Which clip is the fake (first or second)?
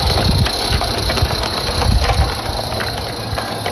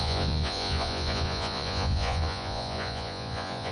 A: second